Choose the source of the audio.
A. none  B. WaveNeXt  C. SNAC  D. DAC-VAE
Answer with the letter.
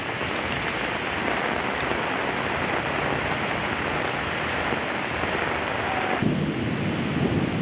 A